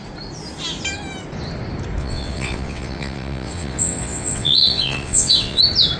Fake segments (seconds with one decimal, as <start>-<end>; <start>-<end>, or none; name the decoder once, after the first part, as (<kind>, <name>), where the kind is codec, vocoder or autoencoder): 2.0-5.6 (vocoder, WaveNeXt)